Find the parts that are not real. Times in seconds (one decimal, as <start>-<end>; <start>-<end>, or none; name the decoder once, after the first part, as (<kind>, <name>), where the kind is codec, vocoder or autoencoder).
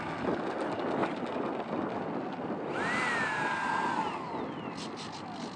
none